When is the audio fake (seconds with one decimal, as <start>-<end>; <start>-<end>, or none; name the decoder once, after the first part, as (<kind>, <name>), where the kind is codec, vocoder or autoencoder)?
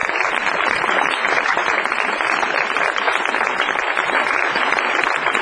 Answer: none